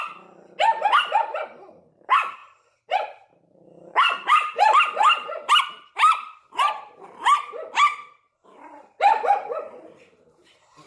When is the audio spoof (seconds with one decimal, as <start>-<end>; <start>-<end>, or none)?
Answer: none